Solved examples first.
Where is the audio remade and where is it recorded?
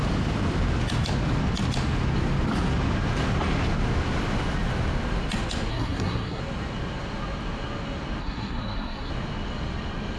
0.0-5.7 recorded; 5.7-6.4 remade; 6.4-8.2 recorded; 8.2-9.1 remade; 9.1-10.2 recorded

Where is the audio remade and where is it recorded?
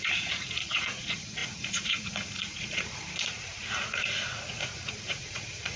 0.0-5.8 remade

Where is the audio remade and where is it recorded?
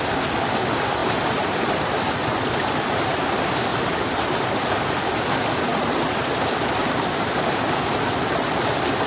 0.0-1.0 recorded; 1.0-1.7 remade; 1.7-3.7 recorded; 3.7-4.3 remade; 4.3-9.1 recorded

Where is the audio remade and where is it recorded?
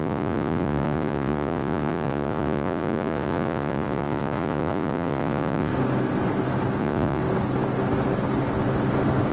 0.0-5.7 remade; 5.7-6.8 recorded; 6.8-7.2 remade; 7.2-9.3 recorded